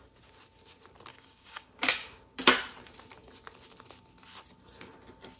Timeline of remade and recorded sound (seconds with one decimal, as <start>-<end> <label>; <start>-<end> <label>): 0.0-1.1 recorded; 1.1-1.7 remade; 1.7-5.4 recorded